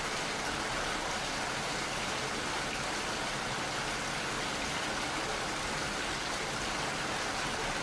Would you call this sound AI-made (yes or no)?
no